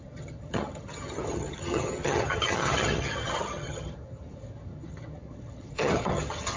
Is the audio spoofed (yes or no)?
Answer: yes